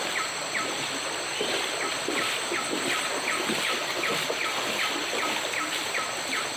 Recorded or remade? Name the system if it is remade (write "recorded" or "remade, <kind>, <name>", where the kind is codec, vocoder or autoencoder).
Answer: recorded